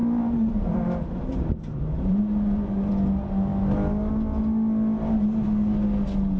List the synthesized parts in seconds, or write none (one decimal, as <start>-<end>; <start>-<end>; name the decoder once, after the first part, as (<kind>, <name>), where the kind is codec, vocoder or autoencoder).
0.0-0.8 (vocoder, BigVGAN v2); 1.3-2.9